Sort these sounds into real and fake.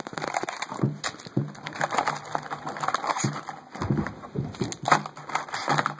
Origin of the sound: real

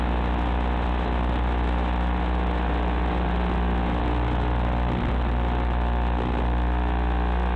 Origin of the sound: real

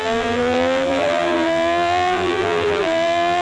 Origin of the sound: fake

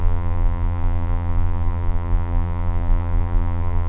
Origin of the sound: fake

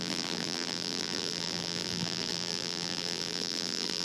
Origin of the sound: fake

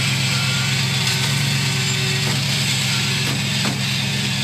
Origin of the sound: real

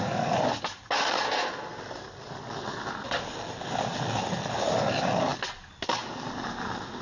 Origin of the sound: real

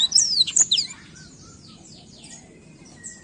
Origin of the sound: fake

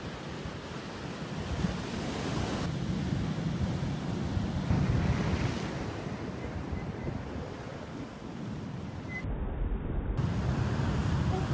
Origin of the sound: real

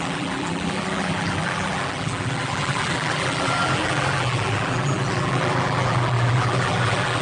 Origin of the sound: fake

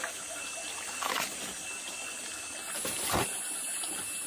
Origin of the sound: real